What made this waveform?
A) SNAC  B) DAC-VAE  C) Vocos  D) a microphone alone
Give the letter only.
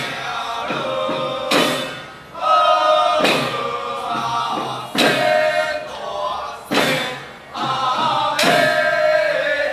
D